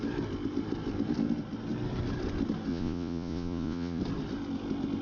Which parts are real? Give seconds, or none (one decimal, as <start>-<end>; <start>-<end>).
0.0-2.7; 4.0-5.0

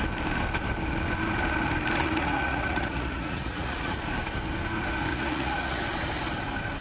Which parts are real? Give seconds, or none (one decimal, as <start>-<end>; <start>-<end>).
0.0-2.0; 4.0-5.1; 5.8-6.8